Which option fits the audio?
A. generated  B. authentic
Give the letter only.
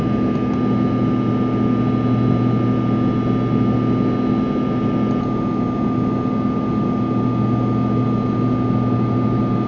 B